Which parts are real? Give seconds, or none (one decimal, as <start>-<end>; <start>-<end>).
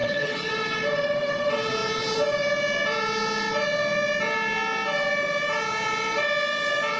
0.5-7.0